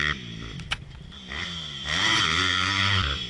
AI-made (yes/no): no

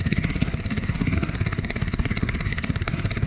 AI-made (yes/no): yes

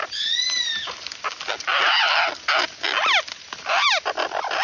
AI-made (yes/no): no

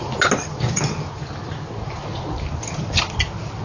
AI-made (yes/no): no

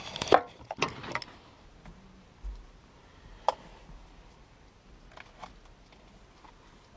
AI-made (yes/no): no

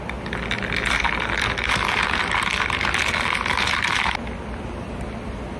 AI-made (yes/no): no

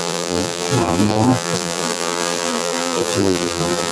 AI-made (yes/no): yes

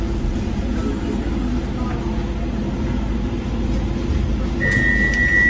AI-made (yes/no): no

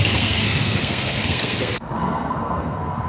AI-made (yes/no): yes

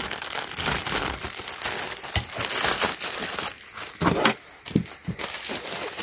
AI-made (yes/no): no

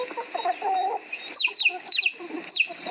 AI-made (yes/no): yes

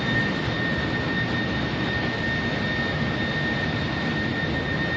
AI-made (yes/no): no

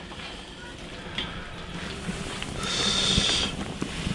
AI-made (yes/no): no